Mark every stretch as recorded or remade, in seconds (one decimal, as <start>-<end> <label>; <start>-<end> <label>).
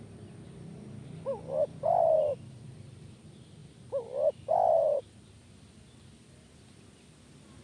0.0-7.6 recorded